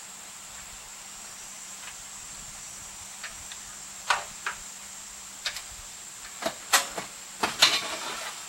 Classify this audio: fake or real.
real